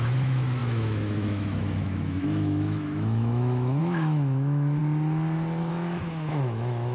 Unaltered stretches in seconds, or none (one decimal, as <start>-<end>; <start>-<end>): 4.8-5.7